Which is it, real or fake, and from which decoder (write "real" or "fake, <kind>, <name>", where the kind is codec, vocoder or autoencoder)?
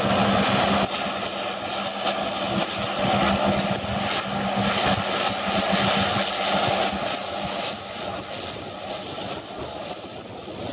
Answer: real